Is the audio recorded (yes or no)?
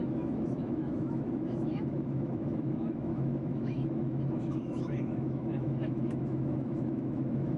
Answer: no